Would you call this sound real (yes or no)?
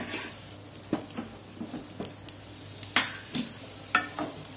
yes